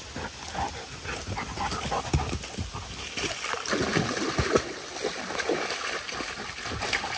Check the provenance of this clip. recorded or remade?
recorded